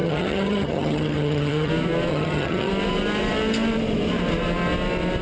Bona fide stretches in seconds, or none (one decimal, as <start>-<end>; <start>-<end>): 1.7-2.1; 2.7-5.2